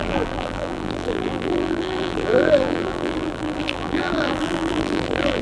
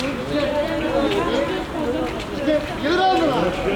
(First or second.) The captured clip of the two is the second